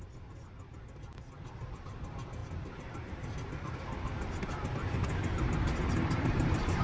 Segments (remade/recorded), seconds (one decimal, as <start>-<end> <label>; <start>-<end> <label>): 0.0-2.4 recorded; 2.4-3.8 remade; 3.8-5.0 recorded; 5.0-6.8 remade